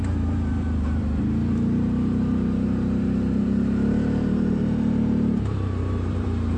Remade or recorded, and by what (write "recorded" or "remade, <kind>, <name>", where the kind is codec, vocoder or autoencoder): remade, vocoder, BigVGAN v2